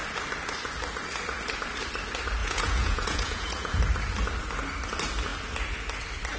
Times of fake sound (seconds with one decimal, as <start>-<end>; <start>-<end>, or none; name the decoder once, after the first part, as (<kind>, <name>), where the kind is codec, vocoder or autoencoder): 2.4-3.8 (vocoder, Vocos)